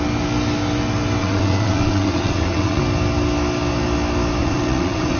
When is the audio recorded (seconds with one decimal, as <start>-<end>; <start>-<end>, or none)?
0.0-1.2; 2.8-4.4